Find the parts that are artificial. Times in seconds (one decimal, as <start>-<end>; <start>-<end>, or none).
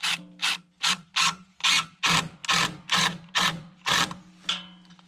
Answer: none